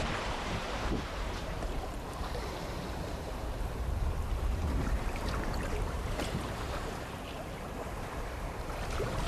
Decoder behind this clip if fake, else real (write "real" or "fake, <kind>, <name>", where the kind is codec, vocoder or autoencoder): fake, vocoder, BigVGAN v2